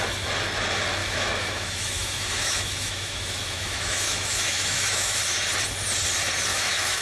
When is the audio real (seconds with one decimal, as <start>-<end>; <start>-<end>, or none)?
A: 0.0-1.0; 5.2-6.5

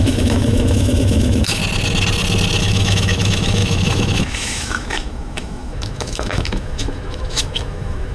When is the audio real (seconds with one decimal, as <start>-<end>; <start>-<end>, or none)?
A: 1.6-2.6

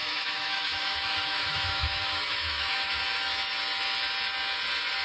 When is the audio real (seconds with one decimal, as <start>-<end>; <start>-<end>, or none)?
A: 3.0-5.0

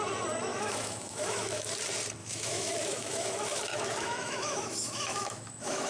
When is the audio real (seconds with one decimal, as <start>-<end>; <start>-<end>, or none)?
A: 0.0-0.5; 1.7-2.2

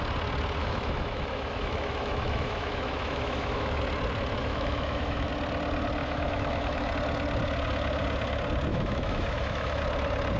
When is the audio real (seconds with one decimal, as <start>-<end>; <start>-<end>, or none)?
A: 0.0-0.6; 3.8-4.4; 5.3-6.0; 6.9-8.7; 9.8-10.4

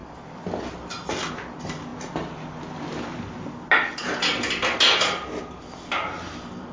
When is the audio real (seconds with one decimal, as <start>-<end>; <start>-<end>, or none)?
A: 0.0-6.7

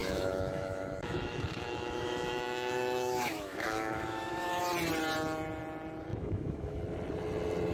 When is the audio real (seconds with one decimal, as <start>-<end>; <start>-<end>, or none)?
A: 4.6-6.1; 6.8-7.7